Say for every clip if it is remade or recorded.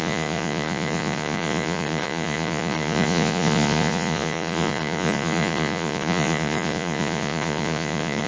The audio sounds remade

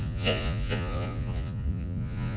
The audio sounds remade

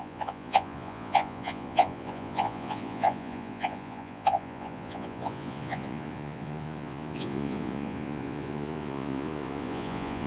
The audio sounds remade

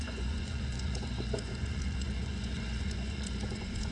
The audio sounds remade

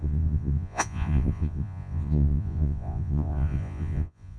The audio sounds remade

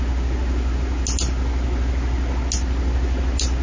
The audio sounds recorded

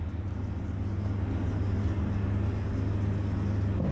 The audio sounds recorded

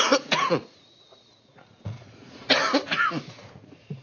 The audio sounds remade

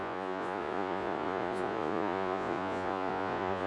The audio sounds remade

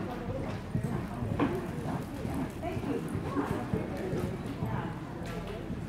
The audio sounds recorded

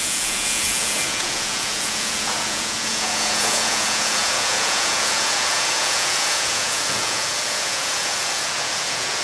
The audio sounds remade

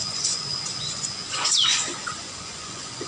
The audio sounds remade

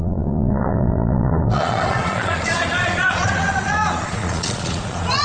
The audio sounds remade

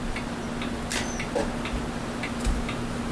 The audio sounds recorded